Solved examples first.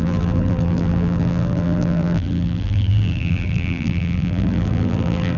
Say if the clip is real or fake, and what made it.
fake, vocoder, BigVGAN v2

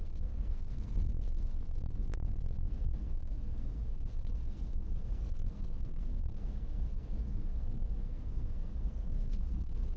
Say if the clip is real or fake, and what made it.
fake, codec, SNAC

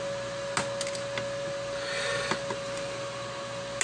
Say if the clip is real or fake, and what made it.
real